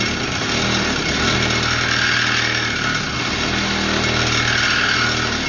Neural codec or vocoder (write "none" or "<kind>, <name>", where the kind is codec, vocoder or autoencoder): none